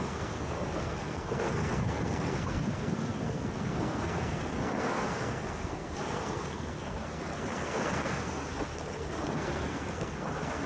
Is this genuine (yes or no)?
no